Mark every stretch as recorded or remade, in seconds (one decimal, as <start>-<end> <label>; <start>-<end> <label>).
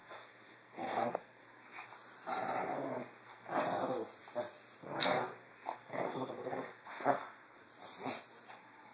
0.0-1.9 remade; 1.9-2.6 recorded; 2.6-3.5 remade; 3.5-4.8 recorded; 4.8-7.7 remade; 7.7-8.5 recorded; 8.5-8.9 remade